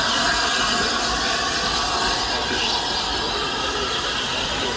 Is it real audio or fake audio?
real